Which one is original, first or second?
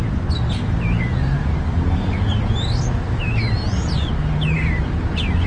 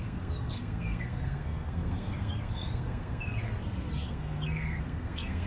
first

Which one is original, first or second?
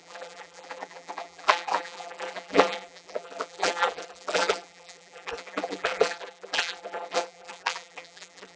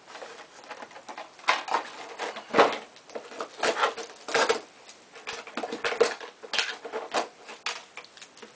second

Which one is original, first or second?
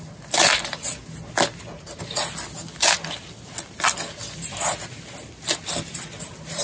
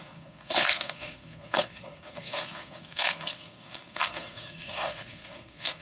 first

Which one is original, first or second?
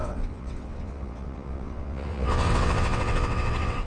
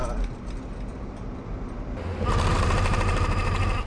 second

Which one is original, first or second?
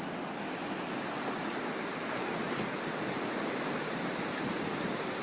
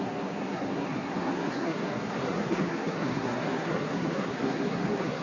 first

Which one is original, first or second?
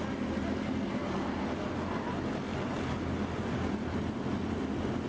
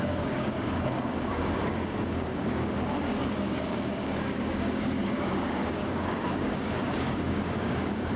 first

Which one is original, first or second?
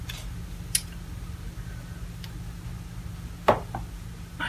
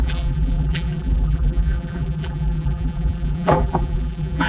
first